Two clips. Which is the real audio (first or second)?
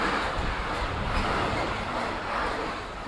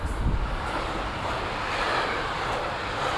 first